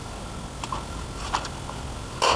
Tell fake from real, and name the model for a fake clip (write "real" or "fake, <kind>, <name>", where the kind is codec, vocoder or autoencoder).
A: real